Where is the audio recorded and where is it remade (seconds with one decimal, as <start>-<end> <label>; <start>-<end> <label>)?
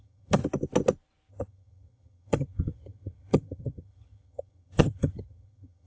0.0-0.4 remade; 0.4-1.3 recorded; 1.3-5.9 remade